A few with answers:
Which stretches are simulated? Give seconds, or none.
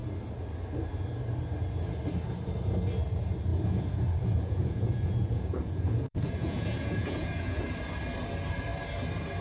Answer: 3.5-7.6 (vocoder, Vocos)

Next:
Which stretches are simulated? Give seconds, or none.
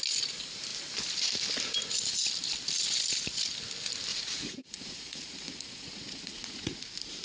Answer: 4.1-6.8 (vocoder, Vocos)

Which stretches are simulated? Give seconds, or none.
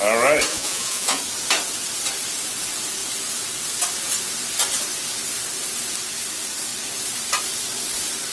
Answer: 0.5-1.2 (vocoder, Vocos)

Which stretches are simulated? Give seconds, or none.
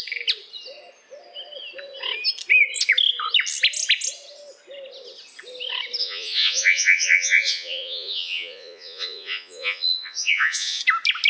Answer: 6.0-10.8 (vocoder, Vocos)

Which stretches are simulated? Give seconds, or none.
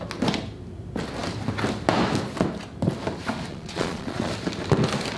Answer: 3.5-4.3 (vocoder, Vocos)